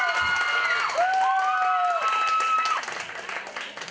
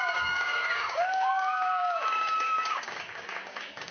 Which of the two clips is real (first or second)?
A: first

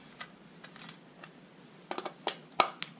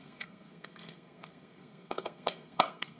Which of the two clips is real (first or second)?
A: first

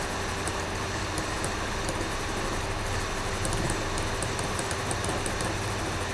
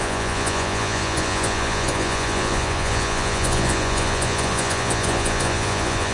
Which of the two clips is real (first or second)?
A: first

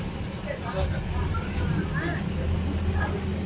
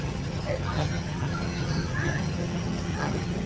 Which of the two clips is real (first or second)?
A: first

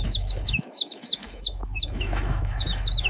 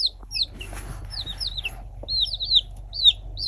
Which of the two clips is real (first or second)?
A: second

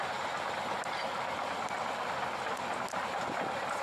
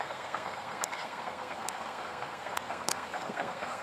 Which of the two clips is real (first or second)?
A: first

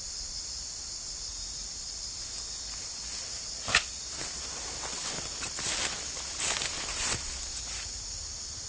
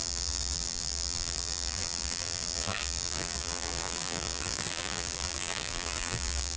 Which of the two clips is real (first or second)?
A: first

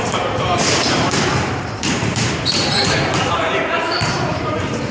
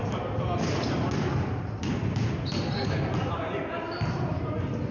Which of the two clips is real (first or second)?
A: second